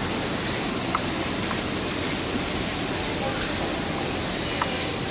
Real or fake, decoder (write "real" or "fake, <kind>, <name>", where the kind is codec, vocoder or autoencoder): real